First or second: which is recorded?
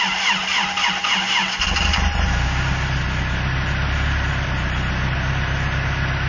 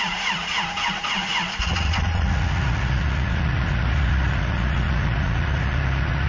first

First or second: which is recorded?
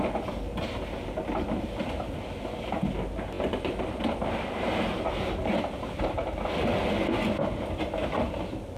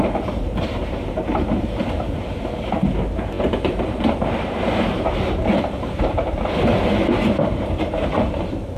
first